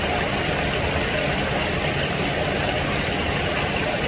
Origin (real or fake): real